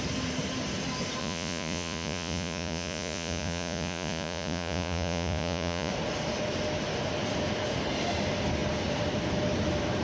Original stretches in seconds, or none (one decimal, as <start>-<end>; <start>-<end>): 0.0-1.2; 5.9-10.0